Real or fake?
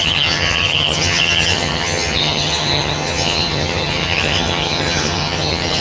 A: fake